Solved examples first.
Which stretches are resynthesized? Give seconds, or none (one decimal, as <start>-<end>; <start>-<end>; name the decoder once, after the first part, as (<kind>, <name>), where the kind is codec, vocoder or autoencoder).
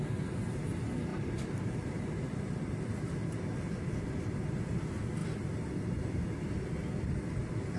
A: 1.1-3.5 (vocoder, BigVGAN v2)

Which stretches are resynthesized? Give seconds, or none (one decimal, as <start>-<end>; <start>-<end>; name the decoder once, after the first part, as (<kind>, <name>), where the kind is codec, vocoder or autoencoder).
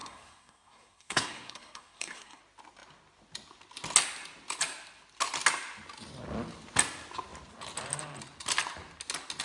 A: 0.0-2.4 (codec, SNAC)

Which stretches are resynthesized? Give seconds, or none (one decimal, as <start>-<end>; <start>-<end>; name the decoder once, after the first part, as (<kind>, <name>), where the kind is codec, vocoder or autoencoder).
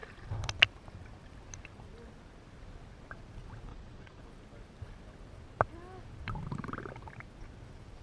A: 3.7-4.2 (vocoder, Vocos)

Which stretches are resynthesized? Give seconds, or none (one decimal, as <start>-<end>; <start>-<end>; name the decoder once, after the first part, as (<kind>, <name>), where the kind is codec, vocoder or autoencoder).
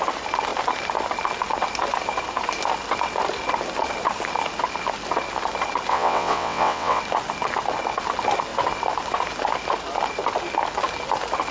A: 5.9-7.0 (vocoder, WaveNeXt)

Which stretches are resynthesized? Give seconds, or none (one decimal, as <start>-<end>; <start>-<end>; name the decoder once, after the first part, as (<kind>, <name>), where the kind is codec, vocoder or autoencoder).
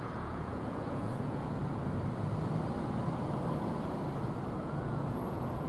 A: 0.0-1.6 (vocoder, Vocos); 4.6-5.7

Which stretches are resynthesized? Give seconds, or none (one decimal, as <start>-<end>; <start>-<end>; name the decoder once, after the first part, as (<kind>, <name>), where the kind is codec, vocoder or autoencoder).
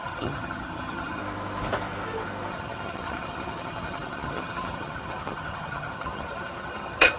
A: 0.0-1.2 (vocoder, HiFi-GAN); 2.5-7.2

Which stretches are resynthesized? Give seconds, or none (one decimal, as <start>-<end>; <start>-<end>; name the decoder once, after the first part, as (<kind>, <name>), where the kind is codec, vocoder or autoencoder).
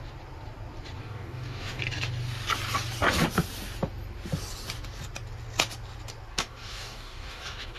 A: 1.0-1.8 (codec, DAC); 6.3-7.8